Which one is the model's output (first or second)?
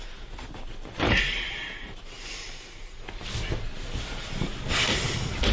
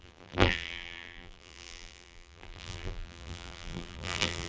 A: second